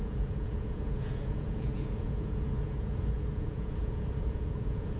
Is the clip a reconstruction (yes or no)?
yes